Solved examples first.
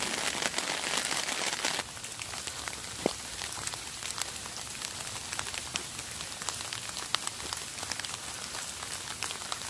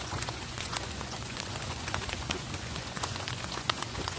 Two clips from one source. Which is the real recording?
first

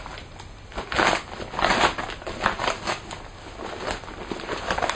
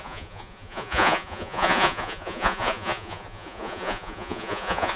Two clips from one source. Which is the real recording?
first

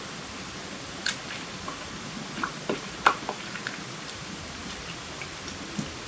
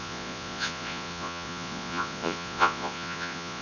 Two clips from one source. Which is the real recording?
first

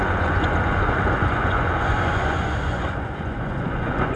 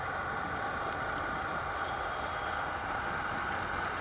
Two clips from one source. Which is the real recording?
second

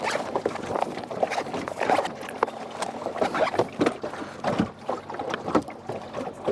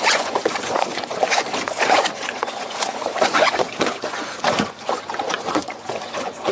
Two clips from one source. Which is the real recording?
first